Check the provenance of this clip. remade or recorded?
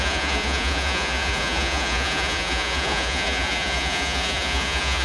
remade